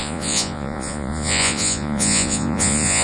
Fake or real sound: fake